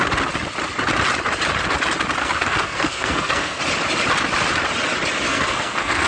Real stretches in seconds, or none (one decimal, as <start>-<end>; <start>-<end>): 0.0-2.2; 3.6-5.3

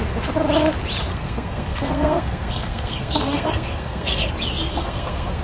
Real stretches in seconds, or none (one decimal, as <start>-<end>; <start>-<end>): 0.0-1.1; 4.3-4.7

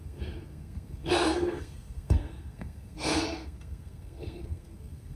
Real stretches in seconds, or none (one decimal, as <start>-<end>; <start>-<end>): none